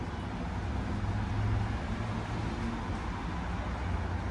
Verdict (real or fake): real